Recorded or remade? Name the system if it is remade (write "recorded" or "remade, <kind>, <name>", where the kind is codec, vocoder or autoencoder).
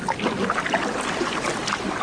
recorded